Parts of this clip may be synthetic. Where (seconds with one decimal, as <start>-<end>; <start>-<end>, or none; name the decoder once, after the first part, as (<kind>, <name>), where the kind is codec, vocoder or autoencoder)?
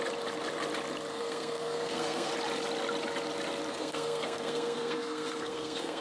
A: 1.1-2.3 (codec, SNAC); 3.7-6.0